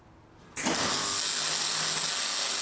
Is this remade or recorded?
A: recorded